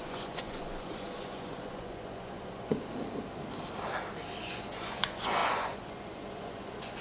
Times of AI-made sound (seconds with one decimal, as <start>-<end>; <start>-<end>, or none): 0.0-2.7; 4.4-7.0